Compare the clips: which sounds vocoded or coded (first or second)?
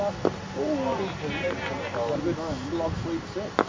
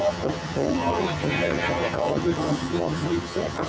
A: second